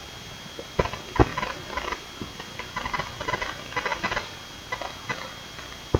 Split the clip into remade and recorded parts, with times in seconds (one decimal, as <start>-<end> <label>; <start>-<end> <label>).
0.0-6.0 recorded